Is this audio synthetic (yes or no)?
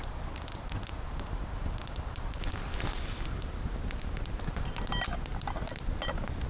no